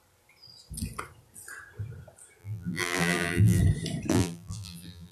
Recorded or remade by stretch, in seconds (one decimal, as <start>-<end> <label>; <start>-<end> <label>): 0.0-2.4 recorded; 2.4-3.6 remade; 3.6-4.1 recorded; 4.1-5.1 remade